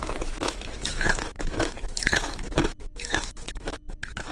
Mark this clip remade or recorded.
remade